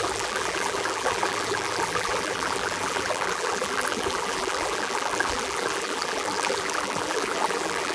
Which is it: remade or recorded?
remade